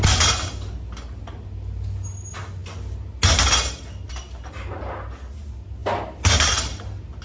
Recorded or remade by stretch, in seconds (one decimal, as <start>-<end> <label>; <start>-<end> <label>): 0.0-7.2 recorded